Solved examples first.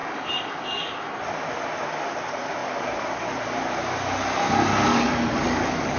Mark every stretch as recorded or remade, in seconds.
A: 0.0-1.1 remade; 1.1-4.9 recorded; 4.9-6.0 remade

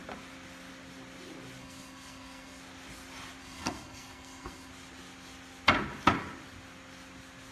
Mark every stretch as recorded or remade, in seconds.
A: 0.0-1.6 recorded; 1.6-2.6 remade; 2.6-3.4 recorded; 3.4-4.7 remade; 4.7-7.5 recorded

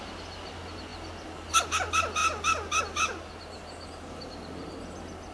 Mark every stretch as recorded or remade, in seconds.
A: 0.0-5.3 recorded

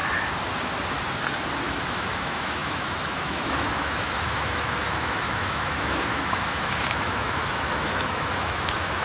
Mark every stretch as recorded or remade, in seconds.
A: 0.0-1.9 recorded; 1.9-9.0 remade

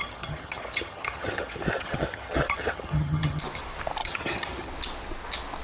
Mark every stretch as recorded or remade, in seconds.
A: 0.0-3.4 remade; 3.4-4.0 recorded; 4.0-4.7 remade; 4.7-5.6 recorded

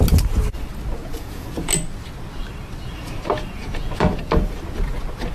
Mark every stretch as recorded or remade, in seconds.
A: 0.0-1.0 recorded; 1.0-1.5 remade; 1.5-3.6 recorded; 3.6-4.2 remade; 4.2-5.3 recorded

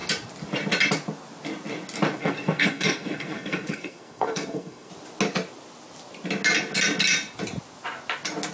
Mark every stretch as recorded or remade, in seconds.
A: 0.0-2.2 recorded; 2.2-4.9 remade; 4.9-8.5 recorded